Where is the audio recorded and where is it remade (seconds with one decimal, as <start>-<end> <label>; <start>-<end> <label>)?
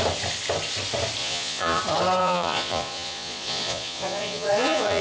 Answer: 0.0-1.2 recorded; 1.2-1.8 remade; 1.8-2.2 recorded; 2.2-5.0 remade